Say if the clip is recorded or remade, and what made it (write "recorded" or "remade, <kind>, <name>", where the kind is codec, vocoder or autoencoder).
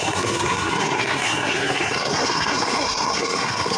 remade, codec, SNAC